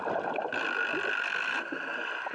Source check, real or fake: real